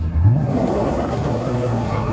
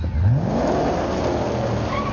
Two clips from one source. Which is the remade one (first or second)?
first